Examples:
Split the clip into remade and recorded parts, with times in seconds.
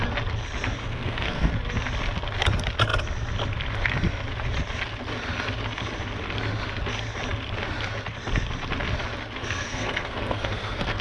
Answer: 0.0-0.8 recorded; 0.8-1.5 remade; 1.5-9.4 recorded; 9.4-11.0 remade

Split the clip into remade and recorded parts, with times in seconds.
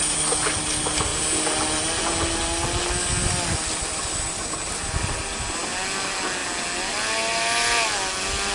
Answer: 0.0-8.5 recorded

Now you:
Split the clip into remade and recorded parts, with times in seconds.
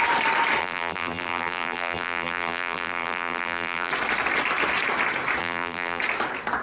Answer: 0.0-0.6 recorded; 0.6-3.9 remade; 3.9-5.4 recorded; 5.4-6.0 remade; 6.0-6.6 recorded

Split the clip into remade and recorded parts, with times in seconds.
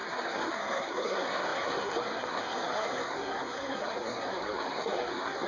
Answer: 0.0-5.5 remade